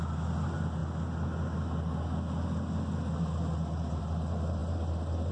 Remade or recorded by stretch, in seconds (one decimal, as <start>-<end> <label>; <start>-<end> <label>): 0.0-5.3 recorded